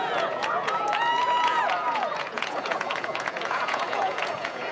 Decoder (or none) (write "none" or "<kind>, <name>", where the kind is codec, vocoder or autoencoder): vocoder, Vocos